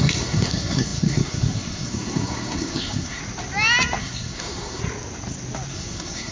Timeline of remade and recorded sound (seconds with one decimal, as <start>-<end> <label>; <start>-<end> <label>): 0.0-3.2 remade; 3.2-4.0 recorded; 4.0-4.8 remade; 4.8-5.7 recorded; 5.7-6.3 remade